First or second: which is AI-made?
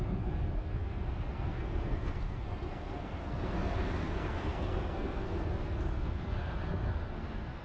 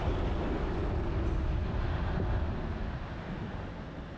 first